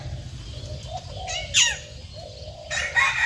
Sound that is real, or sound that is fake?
real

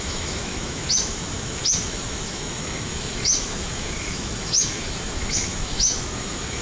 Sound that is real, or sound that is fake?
fake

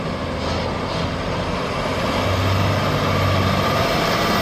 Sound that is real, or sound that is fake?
real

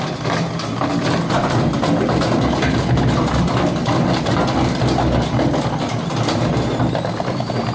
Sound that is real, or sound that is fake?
real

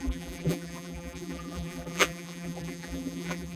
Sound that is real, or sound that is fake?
fake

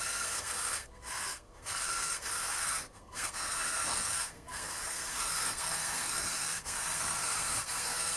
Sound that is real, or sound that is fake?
fake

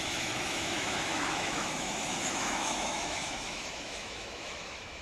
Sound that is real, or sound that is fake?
fake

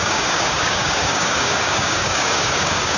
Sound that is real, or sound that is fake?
fake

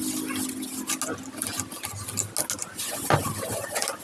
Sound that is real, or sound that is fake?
real